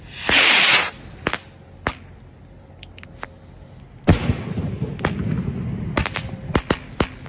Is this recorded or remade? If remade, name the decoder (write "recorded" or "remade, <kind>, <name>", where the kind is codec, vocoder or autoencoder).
recorded